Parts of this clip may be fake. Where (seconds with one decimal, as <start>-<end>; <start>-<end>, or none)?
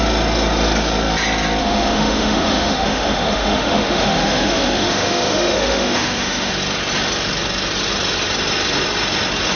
1.6-6.5